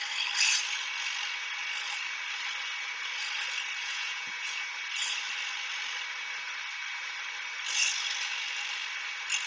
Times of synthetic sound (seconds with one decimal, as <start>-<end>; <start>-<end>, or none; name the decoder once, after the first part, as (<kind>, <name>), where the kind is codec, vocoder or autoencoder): 3.8-4.7 (vocoder, Vocos)